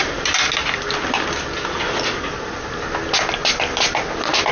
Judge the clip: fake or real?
real